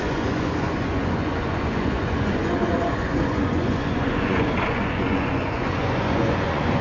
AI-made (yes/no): yes